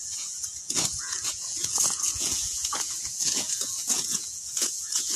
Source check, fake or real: fake